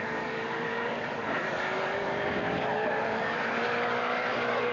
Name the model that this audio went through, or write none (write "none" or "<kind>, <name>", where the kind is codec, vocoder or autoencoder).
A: codec, DAC